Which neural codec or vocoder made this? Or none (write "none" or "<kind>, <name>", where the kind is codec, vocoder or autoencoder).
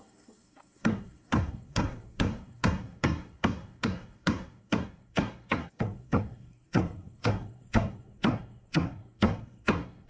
codec, SNAC